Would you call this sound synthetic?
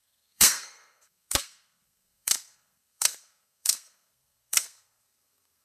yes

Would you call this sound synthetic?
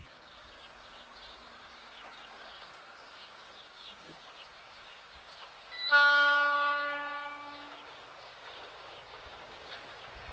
yes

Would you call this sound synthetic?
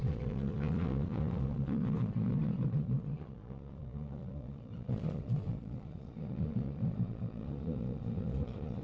yes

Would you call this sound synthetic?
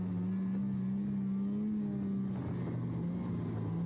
no